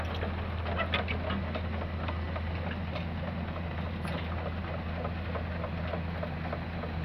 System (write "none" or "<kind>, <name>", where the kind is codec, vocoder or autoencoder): none